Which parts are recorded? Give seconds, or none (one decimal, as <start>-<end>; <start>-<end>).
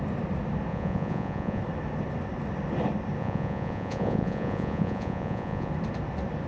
0.0-0.7; 1.6-3.2; 5.7-6.5